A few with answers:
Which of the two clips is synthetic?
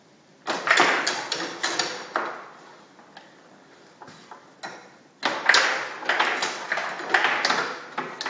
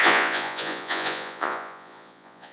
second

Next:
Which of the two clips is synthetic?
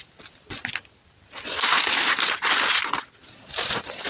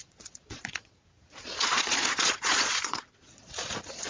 second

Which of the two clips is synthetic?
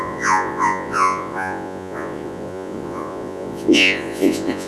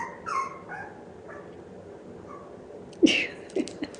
first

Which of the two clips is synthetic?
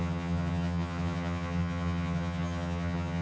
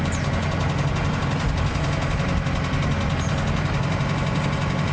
first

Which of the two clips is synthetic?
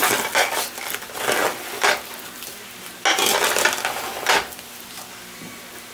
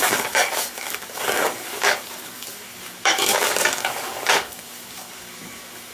second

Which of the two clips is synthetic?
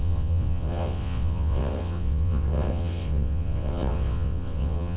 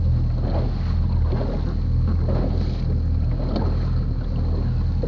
first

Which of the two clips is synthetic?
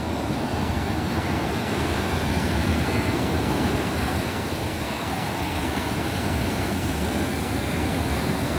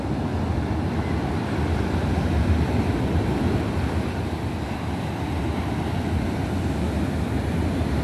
first